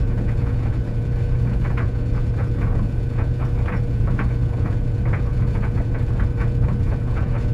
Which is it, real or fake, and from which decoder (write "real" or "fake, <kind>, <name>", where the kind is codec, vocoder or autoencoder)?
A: fake, vocoder, Vocos